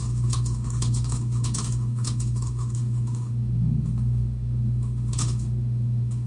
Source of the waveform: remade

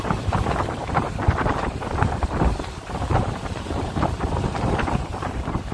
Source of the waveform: remade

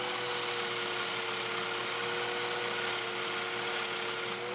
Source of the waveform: recorded